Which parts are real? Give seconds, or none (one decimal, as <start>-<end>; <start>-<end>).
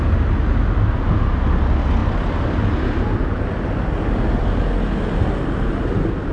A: 0.0-6.3